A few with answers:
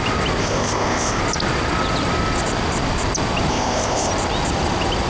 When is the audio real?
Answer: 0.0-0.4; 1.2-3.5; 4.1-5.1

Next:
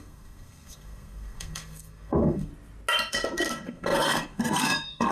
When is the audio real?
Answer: 2.5-3.1

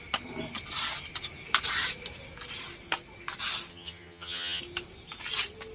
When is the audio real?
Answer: 0.0-3.7; 4.6-5.7

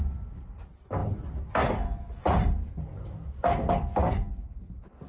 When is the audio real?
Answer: 0.0-5.1

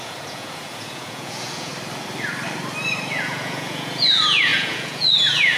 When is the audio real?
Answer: 1.7-3.1

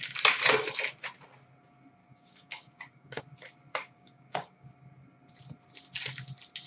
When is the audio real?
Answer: 0.0-2.0; 3.2-3.7; 4.7-6.7

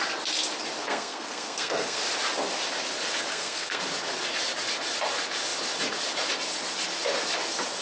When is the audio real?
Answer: 0.0-0.8; 2.0-3.3; 3.8-7.8

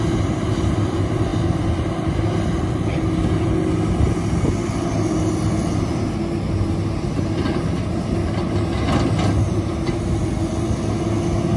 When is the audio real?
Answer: 0.0-11.6